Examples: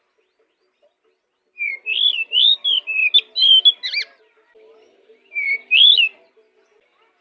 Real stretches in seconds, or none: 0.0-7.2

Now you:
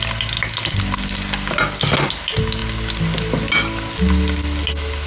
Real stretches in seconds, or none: 0.0-5.1

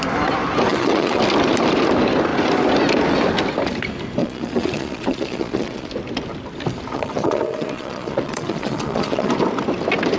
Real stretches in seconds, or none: 0.0-0.7; 1.2-4.2; 5.9-6.9; 9.3-10.2

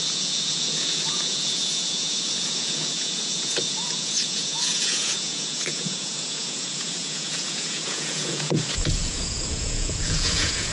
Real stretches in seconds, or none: none

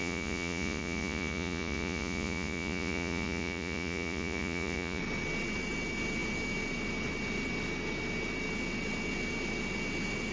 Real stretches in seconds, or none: 5.0-10.3

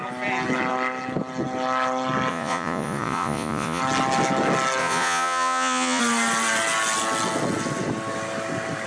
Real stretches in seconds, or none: 0.0-2.3; 3.8-4.8; 6.0-8.9